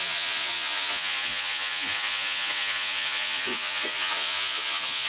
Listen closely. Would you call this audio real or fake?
fake